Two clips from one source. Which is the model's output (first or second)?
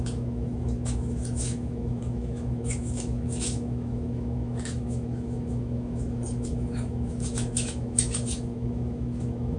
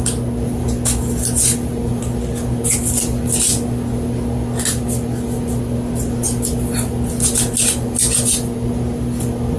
first